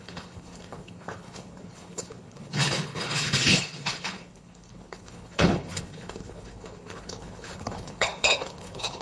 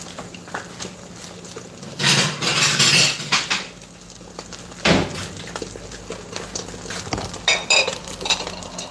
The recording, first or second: second